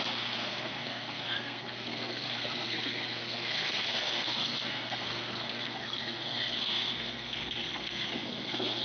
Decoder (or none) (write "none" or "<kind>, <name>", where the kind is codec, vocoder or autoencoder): codec, SNAC